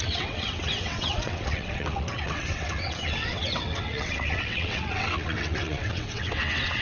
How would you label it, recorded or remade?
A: remade